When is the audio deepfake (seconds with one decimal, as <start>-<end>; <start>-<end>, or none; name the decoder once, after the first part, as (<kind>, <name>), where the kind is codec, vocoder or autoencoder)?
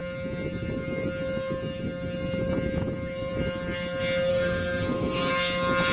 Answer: 4.3-5.3 (codec, SNAC)